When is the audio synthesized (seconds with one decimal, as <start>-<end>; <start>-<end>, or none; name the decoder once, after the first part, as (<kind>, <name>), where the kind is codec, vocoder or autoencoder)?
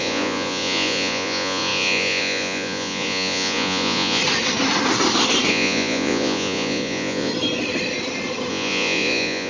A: 0.0-4.2 (vocoder, Vocos); 5.5-7.3; 8.5-9.5